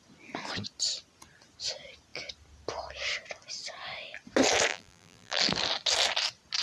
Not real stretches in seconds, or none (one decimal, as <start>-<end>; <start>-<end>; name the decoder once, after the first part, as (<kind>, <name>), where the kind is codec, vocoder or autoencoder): 4.7-5.4 (vocoder, BigVGAN v2)